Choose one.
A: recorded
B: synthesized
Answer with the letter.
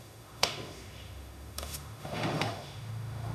B